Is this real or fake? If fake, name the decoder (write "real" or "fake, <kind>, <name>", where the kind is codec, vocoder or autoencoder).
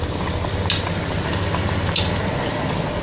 real